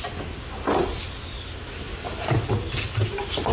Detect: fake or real real